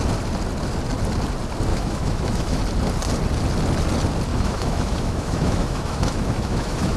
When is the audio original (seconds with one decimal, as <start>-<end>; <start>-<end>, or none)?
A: 0.0-1.7; 2.6-4.3